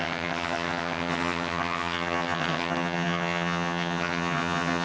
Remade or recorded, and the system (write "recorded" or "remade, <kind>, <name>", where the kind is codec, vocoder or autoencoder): remade, vocoder, HiFi-GAN